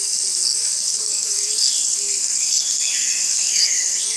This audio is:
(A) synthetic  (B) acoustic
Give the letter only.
A